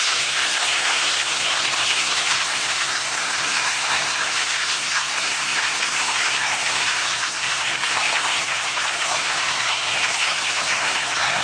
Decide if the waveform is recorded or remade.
remade